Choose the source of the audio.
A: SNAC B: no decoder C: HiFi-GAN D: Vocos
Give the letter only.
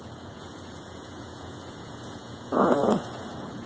D